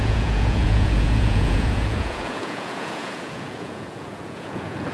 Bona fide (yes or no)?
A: no